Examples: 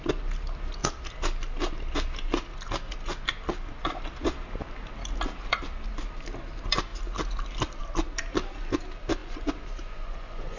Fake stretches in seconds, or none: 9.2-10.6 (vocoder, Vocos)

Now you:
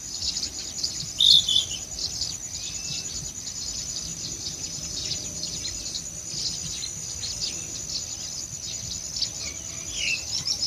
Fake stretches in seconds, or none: 4.1-5.7 (vocoder, BigVGAN v2)